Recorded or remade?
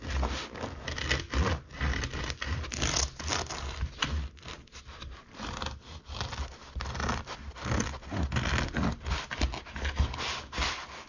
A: recorded